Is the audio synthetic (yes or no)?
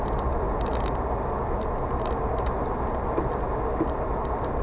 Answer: no